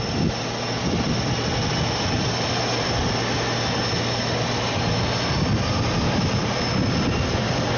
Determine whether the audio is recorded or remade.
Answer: recorded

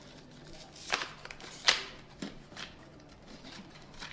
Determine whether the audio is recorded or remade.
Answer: remade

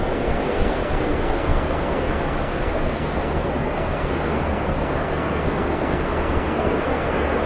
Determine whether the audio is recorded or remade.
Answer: remade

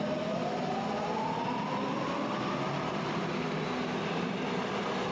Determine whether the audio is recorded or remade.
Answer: recorded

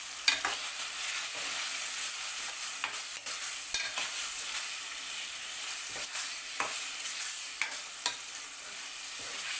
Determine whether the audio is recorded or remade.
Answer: recorded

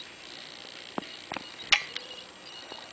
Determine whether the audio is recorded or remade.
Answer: recorded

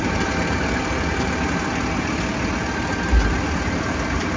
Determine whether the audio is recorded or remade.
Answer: recorded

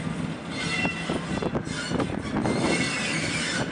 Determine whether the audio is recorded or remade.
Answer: recorded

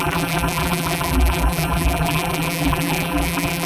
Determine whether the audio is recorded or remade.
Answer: remade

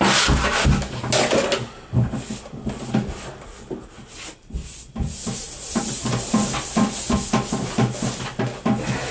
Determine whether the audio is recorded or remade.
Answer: recorded